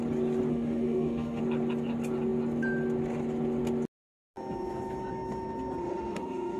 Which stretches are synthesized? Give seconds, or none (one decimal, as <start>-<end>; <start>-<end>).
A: 0.5-1.4; 5.8-6.6